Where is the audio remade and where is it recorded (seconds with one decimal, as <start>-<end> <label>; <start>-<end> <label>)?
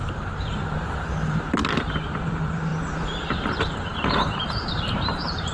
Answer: 0.0-5.5 remade